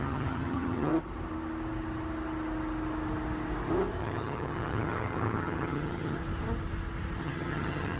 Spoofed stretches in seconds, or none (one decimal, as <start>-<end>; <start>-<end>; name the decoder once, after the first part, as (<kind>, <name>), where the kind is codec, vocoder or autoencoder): 0.0-0.9 (vocoder, HiFi-GAN); 4.0-6.2; 7.2-8.0